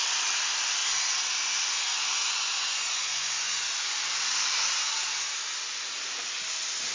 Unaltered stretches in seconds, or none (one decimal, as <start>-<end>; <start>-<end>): 0.0-1.9; 4.0-6.9